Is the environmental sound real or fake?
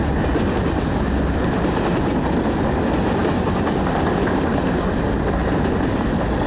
real